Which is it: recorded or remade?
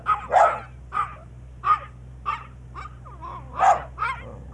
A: recorded